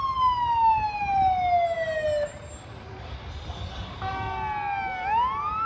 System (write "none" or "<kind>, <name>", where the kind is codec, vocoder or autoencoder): none